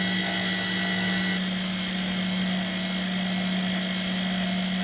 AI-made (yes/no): no